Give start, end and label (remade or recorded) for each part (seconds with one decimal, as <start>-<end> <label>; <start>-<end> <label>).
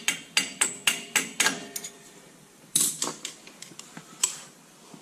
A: 0.0-1.6 recorded; 1.6-4.0 remade; 4.0-5.0 recorded